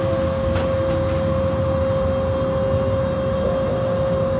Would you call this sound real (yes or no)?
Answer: yes